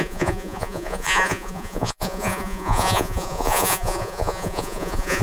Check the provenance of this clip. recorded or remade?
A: remade